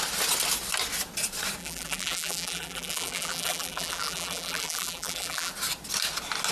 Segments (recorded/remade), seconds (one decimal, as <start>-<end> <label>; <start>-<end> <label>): 0.0-1.6 recorded; 1.6-5.5 remade; 5.5-6.5 recorded